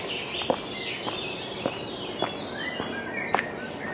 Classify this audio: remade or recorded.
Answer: recorded